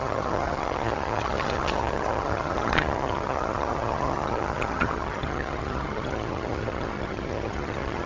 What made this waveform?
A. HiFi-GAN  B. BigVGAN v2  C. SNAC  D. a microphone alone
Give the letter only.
A